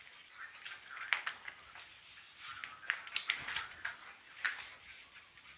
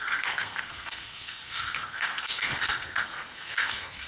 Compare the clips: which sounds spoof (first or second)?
second